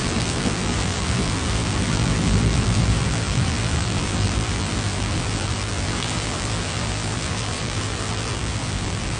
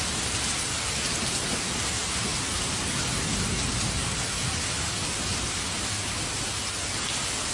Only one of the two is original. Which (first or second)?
second